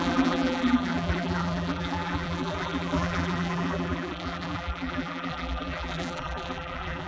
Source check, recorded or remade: remade